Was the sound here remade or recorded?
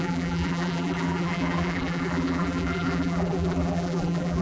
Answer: remade